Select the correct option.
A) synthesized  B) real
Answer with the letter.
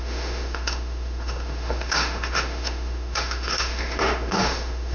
A